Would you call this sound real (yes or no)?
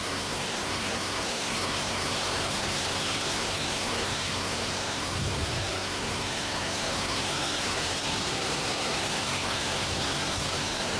no